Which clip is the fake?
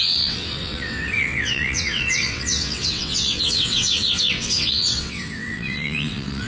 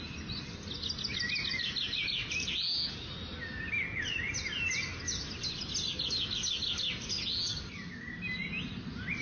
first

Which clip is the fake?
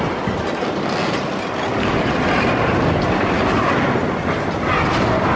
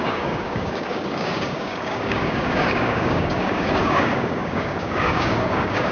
second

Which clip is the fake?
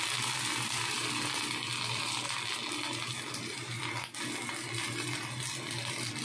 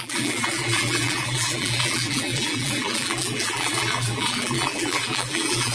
second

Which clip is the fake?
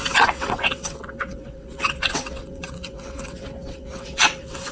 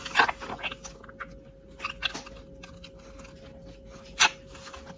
first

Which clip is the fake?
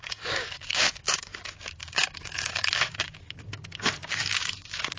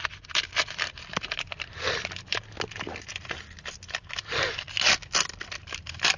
first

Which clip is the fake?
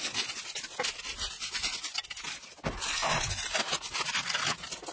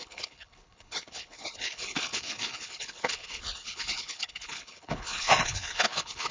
second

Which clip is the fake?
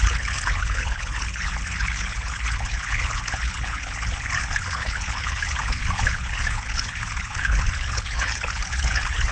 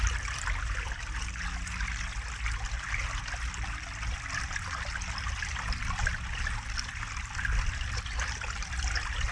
first